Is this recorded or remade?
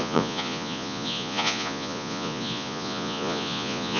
remade